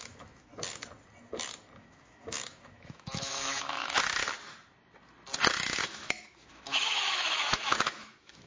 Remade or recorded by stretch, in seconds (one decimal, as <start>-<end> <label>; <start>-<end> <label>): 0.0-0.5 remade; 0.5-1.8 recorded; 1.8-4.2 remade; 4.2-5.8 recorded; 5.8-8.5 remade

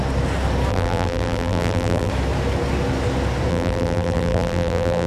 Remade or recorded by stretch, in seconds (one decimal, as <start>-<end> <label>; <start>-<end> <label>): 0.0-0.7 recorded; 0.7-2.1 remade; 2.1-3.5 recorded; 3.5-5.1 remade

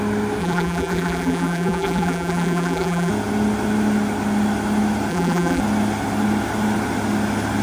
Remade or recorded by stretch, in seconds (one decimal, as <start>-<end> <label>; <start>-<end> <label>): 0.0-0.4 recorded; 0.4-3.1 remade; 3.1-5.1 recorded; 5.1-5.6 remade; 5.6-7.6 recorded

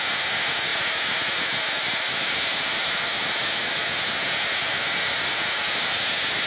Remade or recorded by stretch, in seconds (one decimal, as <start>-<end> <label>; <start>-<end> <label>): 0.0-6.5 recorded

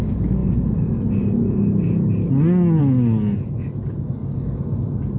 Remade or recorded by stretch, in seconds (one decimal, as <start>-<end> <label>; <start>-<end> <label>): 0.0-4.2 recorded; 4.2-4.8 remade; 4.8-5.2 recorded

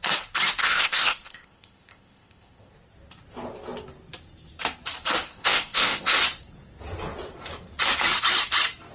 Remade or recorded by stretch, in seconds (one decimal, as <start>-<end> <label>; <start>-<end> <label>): 0.0-0.6 recorded; 0.6-2.7 remade; 2.7-5.3 recorded; 5.3-6.2 remade; 6.2-8.9 recorded